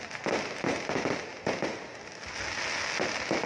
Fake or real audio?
real